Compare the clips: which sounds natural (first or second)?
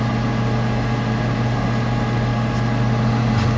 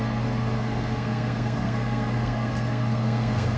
first